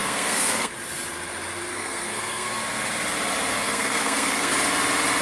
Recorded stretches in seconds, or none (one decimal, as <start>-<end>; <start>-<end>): 0.7-1.7; 2.5-3.5; 4.5-5.2